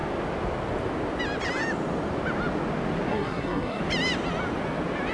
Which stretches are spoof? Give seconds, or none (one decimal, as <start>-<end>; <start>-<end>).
3.1-3.8